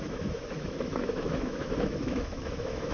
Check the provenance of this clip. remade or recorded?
remade